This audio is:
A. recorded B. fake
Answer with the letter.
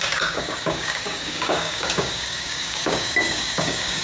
B